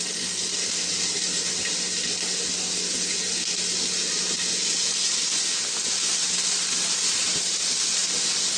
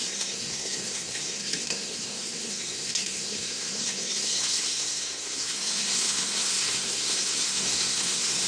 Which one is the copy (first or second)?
second